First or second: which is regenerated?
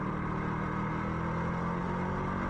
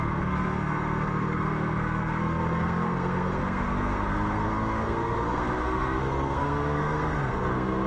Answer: second